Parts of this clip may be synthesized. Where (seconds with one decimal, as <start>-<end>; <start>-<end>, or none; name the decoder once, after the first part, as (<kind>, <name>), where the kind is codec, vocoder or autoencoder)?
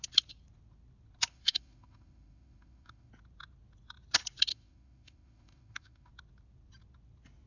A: 1.3-3.1 (autoencoder, DAC-VAE); 4.5-6.1